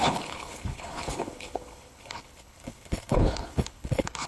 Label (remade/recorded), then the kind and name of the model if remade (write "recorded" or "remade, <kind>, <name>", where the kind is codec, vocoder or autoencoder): remade, codec, HILCodec